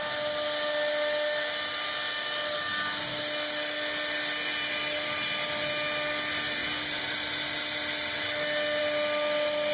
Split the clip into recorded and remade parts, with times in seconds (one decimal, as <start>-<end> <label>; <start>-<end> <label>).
0.0-9.7 recorded